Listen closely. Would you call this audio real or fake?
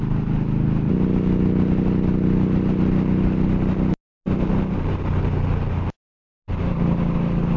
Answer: real